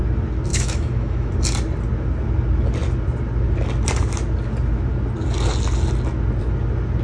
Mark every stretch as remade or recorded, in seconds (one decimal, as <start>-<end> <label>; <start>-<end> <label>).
0.0-0.5 recorded; 0.5-1.3 remade; 1.3-7.0 recorded